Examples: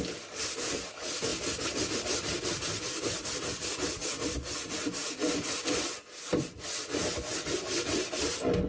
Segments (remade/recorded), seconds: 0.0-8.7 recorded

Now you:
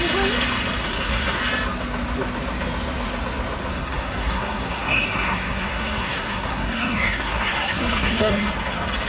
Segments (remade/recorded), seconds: 0.0-0.8 recorded; 0.8-1.4 remade; 1.4-3.7 recorded; 3.7-8.5 remade; 8.5-9.1 recorded

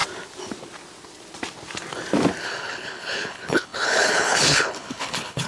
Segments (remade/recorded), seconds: 0.0-2.4 recorded; 2.4-5.5 remade

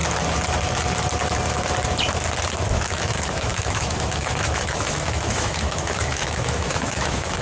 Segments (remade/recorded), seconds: 0.0-2.7 recorded; 2.7-7.4 remade

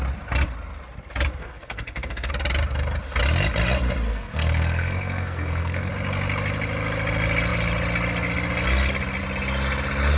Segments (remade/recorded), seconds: 0.0-1.4 recorded; 1.4-2.3 remade; 2.3-4.1 recorded; 4.1-5.9 remade; 5.9-10.2 recorded

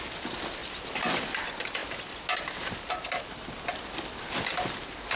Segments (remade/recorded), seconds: 0.0-5.2 recorded